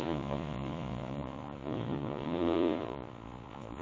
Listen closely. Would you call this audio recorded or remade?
remade